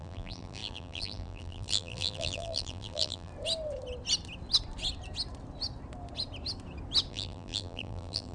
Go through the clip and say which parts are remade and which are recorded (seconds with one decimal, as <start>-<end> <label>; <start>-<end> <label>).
0.0-3.3 remade; 3.3-7.1 recorded; 7.1-8.3 remade